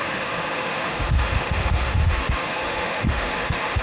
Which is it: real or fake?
fake